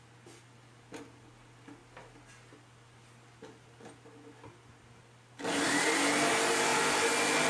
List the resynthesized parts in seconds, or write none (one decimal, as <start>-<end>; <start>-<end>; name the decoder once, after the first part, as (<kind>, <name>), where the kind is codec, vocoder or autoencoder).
none